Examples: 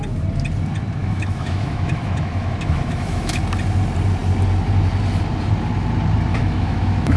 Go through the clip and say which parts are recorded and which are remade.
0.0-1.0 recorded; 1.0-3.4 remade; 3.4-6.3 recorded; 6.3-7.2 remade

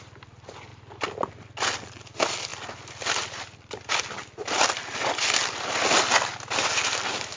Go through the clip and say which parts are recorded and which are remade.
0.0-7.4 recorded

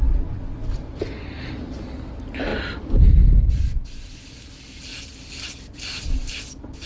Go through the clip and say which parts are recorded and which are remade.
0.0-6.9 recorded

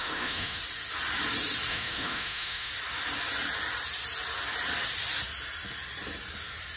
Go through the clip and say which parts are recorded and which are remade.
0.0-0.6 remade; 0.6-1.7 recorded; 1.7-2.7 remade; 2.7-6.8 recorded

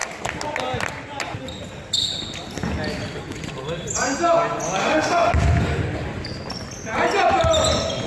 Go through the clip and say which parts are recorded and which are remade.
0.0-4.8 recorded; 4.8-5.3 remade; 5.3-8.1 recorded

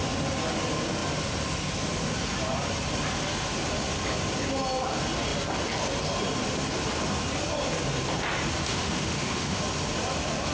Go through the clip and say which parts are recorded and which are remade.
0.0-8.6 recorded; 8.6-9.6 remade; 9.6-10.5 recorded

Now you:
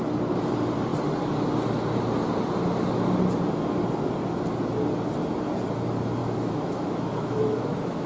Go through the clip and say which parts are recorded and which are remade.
0.0-6.2 recorded; 6.2-8.1 remade

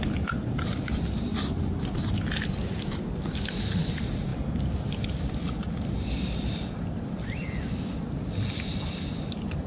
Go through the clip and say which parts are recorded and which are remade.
0.0-9.7 recorded